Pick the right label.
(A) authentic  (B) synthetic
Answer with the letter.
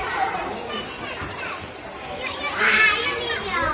B